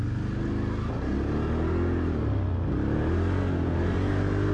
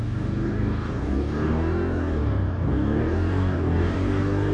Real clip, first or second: first